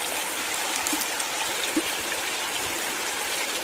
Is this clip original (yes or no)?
yes